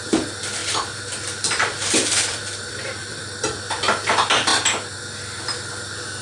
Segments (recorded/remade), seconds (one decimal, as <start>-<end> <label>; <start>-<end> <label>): 0.0-0.6 recorded; 0.6-3.6 remade; 3.6-6.2 recorded